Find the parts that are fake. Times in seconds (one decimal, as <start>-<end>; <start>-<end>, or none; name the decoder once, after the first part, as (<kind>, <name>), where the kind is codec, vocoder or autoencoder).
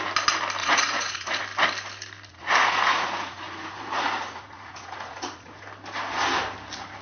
0.6-1.4 (vocoder, Vocos); 2.3-5.6